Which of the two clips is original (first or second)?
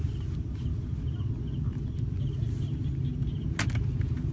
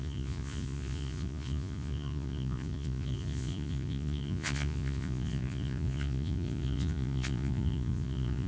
first